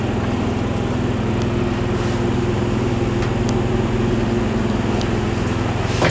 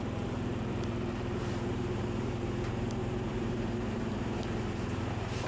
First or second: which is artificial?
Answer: second